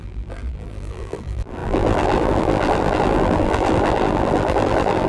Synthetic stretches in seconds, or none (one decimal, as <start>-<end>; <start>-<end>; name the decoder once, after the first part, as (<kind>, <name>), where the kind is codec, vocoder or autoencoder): 0.0-5.1 (vocoder, BigVGAN v2)